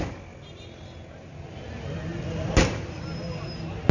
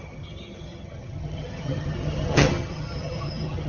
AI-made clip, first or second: second